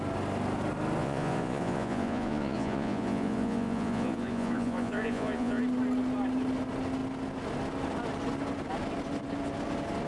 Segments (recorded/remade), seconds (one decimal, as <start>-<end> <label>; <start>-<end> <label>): 0.0-1.0 recorded; 1.0-5.6 remade; 5.6-10.1 recorded